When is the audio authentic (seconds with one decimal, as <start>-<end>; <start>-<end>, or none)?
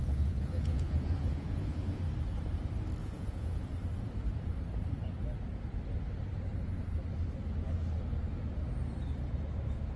2.0-3.0; 3.7-10.0